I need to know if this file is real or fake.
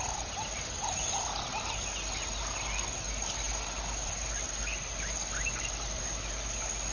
real